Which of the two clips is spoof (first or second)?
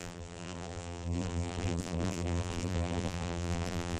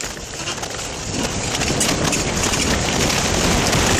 first